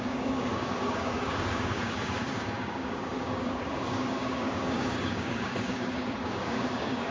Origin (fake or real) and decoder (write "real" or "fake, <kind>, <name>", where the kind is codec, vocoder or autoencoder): fake, codec, DAC